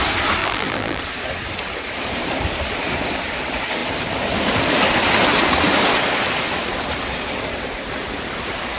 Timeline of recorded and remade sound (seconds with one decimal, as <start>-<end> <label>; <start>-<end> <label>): 0.0-0.4 recorded; 0.4-1.0 remade; 1.0-8.8 recorded